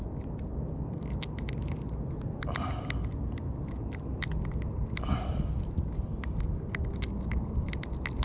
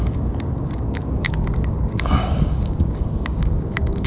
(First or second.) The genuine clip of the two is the first